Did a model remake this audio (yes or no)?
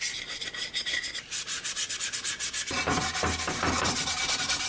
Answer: no